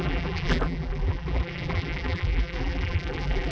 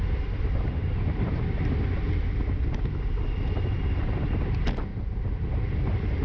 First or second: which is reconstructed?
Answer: first